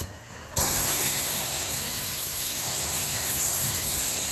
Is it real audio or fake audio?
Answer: fake